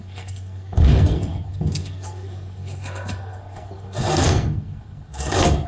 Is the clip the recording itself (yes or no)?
no